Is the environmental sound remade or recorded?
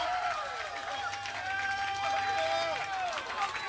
recorded